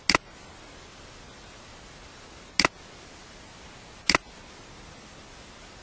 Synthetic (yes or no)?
no